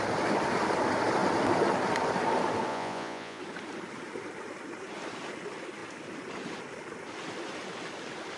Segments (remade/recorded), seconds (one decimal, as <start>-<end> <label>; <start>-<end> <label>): 0.0-2.7 recorded; 2.7-3.4 remade; 3.4-8.4 recorded

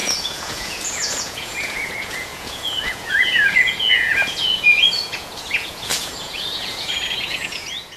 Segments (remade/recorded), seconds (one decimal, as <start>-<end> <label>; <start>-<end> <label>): 0.0-8.0 remade

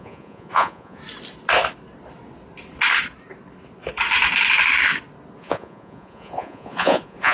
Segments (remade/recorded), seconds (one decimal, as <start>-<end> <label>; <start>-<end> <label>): 0.0-1.0 remade; 1.0-5.4 recorded; 5.4-7.3 remade

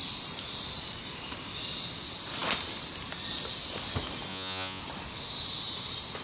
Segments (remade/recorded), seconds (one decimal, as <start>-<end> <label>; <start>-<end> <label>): 0.0-4.3 recorded; 4.3-4.8 remade; 4.8-6.2 recorded